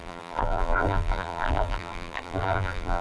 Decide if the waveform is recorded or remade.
remade